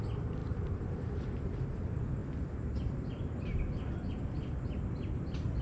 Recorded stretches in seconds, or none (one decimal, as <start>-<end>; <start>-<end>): 0.0-0.4; 1.6-5.6